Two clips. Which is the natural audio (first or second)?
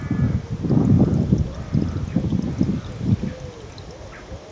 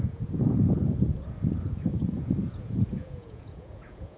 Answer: first